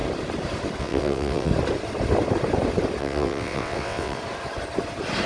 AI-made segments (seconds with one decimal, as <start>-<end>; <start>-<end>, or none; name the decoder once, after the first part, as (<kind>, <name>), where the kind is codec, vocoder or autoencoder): 0.8-1.5 (vocoder, WaveNeXt); 3.0-4.2